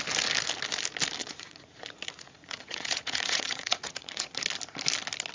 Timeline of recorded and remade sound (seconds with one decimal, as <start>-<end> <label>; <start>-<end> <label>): 0.0-1.2 recorded; 1.2-4.4 remade; 4.4-5.3 recorded